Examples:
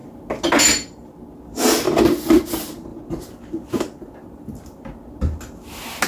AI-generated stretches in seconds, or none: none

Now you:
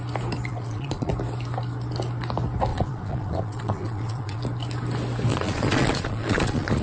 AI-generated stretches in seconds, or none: 0.5-1.1 (vocoder, Vocos); 2.7-4.4; 5.3-6.8

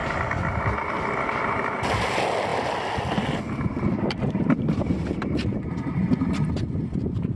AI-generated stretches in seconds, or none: none

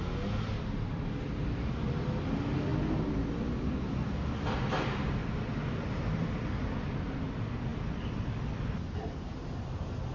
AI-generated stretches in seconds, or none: none

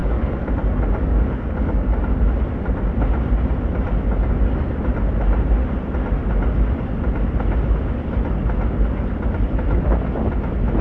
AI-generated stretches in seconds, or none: 0.0-0.5 (codec, DAC); 1.0-2.0